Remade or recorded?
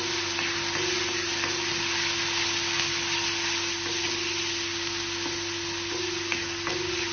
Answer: recorded